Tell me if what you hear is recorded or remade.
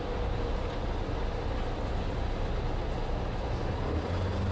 recorded